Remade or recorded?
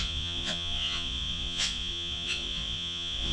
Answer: remade